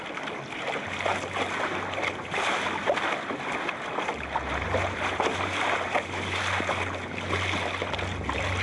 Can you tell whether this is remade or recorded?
recorded